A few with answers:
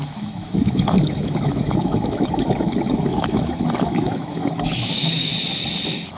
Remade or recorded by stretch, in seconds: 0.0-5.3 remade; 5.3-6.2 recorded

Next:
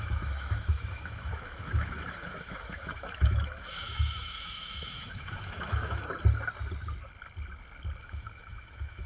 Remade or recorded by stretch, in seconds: 0.0-6.0 remade; 6.0-8.0 recorded; 8.0-9.1 remade

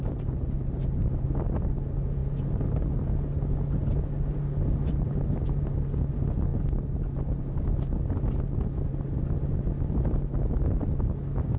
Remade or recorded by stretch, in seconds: 0.0-11.6 recorded

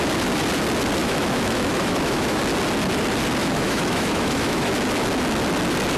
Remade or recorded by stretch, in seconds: 0.0-1.0 recorded; 1.0-2.4 remade; 2.4-3.4 recorded; 3.4-4.7 remade; 4.7-6.0 recorded

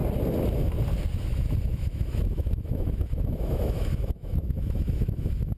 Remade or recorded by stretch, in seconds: 0.0-1.2 recorded; 1.2-5.6 remade

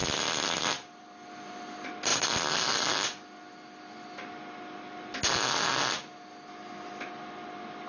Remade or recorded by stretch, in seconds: 0.0-7.9 recorded

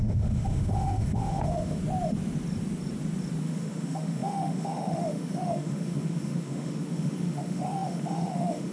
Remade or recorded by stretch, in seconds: 0.0-1.8 remade; 1.8-3.4 recorded; 3.4-8.7 remade